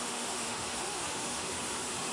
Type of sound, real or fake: fake